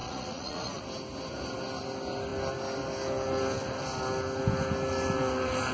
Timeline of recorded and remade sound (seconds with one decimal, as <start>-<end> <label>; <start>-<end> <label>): 0.0-0.8 remade; 0.8-5.7 recorded